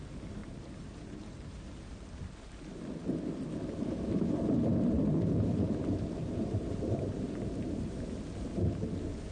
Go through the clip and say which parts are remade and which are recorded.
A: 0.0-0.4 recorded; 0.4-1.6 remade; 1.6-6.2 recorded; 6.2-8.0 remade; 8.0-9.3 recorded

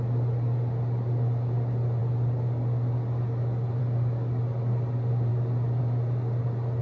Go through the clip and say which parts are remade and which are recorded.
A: 0.0-6.8 recorded

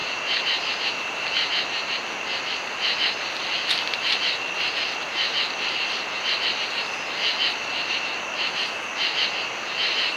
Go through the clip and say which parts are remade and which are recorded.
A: 0.0-0.7 remade; 0.7-10.2 recorded

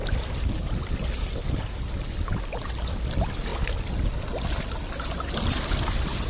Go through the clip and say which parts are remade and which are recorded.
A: 0.0-6.3 recorded

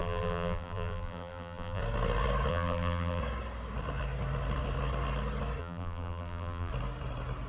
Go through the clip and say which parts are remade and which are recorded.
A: 0.0-1.8 remade; 1.8-2.5 recorded; 2.5-3.2 remade; 3.2-5.6 recorded; 5.6-6.7 remade; 6.7-7.5 recorded

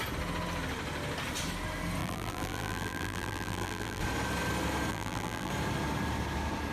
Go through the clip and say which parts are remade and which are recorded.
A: 0.0-2.0 recorded; 2.0-4.0 remade; 4.0-4.9 recorded; 4.9-5.5 remade; 5.5-6.7 recorded

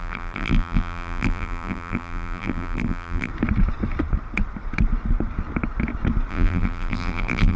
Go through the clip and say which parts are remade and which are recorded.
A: 0.0-3.3 remade; 3.3-6.3 recorded; 6.3-7.6 remade

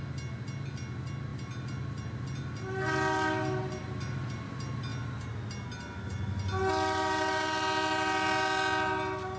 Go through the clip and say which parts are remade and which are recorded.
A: 0.0-9.4 recorded